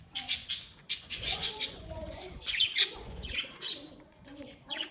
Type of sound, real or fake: fake